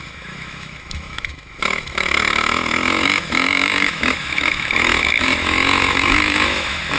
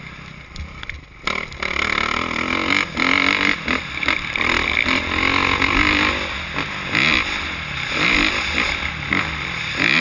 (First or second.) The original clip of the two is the second